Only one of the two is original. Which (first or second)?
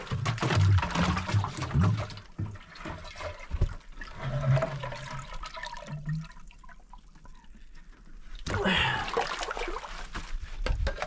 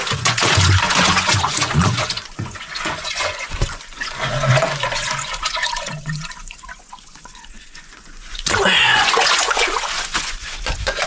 first